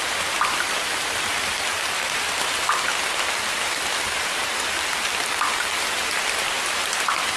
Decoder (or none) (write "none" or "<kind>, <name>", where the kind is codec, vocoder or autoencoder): none